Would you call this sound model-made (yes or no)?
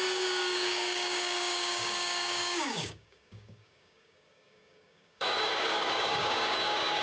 yes